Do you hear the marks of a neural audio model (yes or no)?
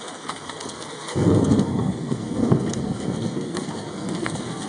yes